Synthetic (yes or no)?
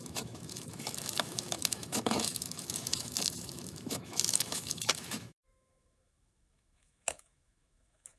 yes